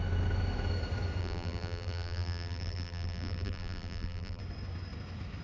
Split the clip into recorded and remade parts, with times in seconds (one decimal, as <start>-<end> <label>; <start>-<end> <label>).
0.0-1.2 recorded; 1.2-4.4 remade; 4.4-5.4 recorded